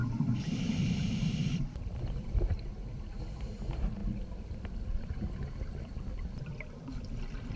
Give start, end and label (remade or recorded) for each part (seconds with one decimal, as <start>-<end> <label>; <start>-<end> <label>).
0.0-0.6 recorded; 0.6-2.5 remade; 2.5-3.2 recorded; 3.2-4.0 remade; 4.0-4.8 recorded; 4.8-7.6 remade